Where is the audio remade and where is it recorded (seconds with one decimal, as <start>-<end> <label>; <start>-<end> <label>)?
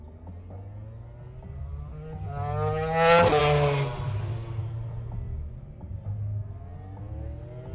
0.0-7.7 recorded